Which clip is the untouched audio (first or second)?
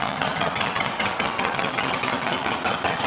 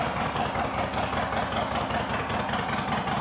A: second